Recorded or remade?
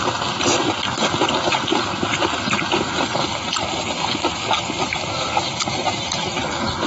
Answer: recorded